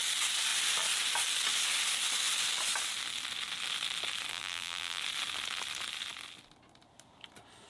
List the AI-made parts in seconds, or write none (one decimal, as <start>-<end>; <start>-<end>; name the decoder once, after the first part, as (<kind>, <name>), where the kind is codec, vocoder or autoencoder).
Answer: 4.3-5.0 (vocoder, BigVGAN v2)